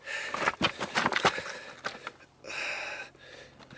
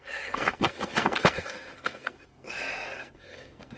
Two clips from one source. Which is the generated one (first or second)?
second